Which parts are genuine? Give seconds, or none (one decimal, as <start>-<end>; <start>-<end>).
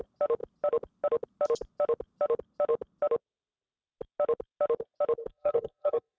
0.0-5.3